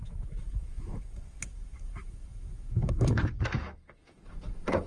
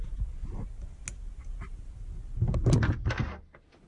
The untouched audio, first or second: second